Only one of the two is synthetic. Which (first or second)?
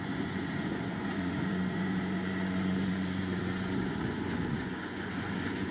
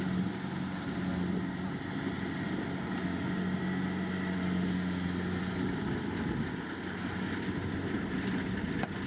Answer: first